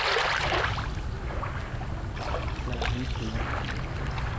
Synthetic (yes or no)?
no